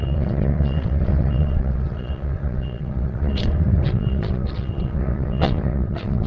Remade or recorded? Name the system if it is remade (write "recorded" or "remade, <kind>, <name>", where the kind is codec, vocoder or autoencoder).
remade, vocoder, WaveNeXt